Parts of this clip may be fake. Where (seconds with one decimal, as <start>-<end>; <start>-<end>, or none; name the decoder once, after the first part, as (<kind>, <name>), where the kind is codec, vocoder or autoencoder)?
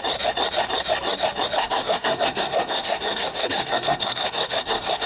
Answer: 1.6-5.1 (codec, SNAC)